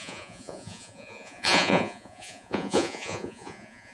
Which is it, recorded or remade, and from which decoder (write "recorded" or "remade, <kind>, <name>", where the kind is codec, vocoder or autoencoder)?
remade, vocoder, Vocos